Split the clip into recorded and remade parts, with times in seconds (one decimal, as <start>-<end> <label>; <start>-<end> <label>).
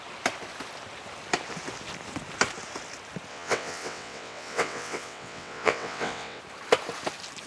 0.0-3.3 recorded; 3.3-6.4 remade; 6.4-7.5 recorded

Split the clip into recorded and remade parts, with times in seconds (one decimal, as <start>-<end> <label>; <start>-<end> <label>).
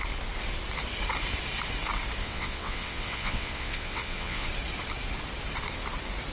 0.0-2.2 recorded; 2.2-4.5 remade; 4.5-6.3 recorded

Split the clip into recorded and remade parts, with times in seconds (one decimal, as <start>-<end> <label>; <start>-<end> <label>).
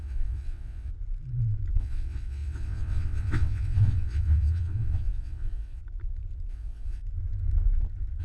0.0-0.9 remade; 0.9-1.8 recorded; 1.8-5.8 remade; 5.8-6.5 recorded; 6.5-7.0 remade; 7.0-8.2 recorded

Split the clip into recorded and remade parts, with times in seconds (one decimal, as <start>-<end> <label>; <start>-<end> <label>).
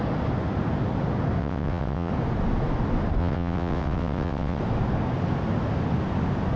0.0-1.4 recorded; 1.4-2.1 remade; 2.1-3.2 recorded; 3.2-4.6 remade; 4.6-6.6 recorded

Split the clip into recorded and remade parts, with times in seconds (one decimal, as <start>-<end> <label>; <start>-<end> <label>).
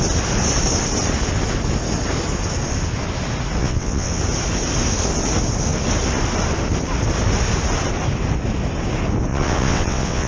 0.0-3.6 recorded; 3.6-4.2 remade; 4.2-9.3 recorded; 9.3-10.3 remade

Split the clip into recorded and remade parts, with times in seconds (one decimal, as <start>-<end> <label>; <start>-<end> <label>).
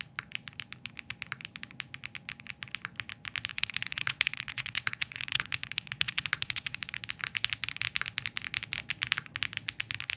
0.0-3.5 recorded; 3.5-7.0 remade; 7.0-10.2 recorded